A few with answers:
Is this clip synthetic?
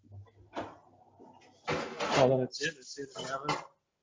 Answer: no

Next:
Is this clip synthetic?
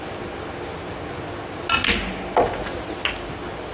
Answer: no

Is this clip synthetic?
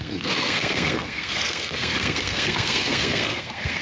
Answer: yes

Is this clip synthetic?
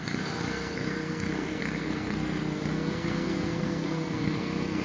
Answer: yes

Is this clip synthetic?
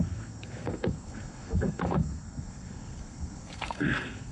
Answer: yes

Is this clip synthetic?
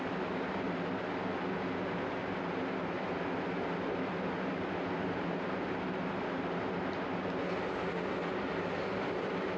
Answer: no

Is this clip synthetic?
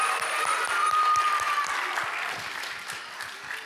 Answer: yes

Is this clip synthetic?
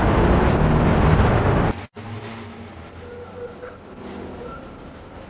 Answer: no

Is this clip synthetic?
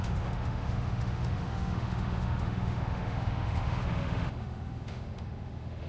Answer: yes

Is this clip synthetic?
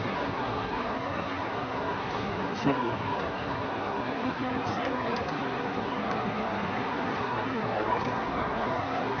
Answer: yes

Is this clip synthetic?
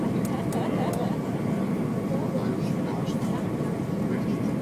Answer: no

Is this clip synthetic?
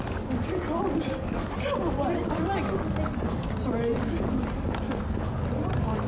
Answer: no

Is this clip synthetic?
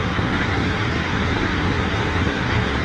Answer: yes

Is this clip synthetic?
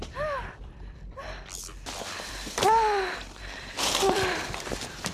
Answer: yes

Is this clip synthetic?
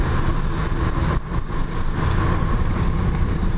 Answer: no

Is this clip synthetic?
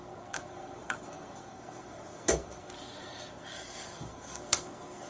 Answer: yes